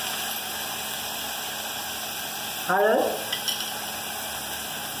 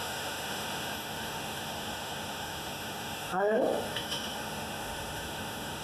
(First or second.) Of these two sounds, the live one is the first